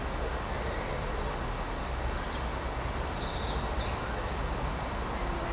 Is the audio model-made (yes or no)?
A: no